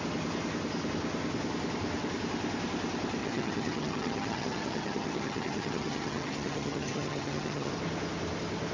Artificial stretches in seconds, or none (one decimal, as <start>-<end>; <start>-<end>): 3.2-7.7